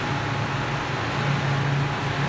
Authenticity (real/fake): real